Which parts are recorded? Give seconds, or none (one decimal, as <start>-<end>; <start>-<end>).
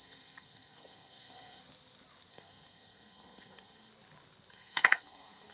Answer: 1.6-2.3; 3.9-4.5